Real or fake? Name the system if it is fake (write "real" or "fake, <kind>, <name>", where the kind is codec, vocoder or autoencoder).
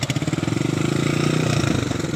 real